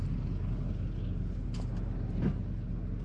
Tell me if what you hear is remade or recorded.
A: recorded